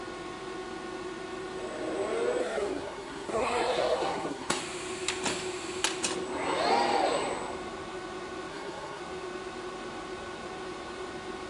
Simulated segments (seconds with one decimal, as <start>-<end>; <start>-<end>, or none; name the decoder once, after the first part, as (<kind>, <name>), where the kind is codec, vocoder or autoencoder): 2.4-4.6 (codec, SNAC); 8.5-9.0